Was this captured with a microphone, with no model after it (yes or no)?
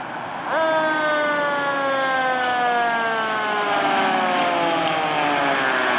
yes